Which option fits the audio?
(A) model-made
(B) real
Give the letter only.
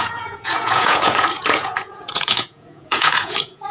A